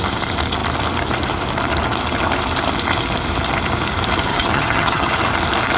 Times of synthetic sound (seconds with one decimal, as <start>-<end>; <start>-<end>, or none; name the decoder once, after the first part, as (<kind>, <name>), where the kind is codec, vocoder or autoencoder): 4.3-5.1 (vocoder, HiFi-GAN)